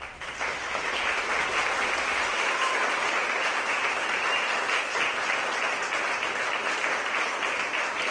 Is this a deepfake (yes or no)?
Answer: no